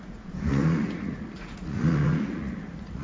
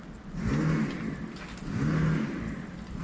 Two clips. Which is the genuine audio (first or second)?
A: second